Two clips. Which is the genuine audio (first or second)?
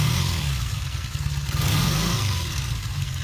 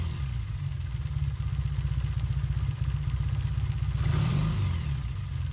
second